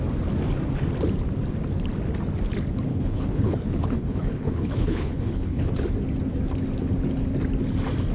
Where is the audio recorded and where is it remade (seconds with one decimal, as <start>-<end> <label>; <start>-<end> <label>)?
0.0-2.9 recorded; 2.9-5.7 remade; 5.7-8.1 recorded